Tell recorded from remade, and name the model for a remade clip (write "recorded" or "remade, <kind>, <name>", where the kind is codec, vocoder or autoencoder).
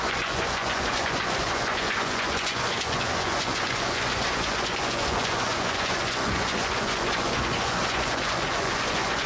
remade, vocoder, Vocos